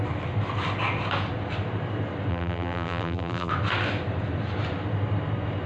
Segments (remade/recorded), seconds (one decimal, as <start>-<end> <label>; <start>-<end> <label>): 0.0-2.3 recorded; 2.3-3.5 remade; 3.5-5.7 recorded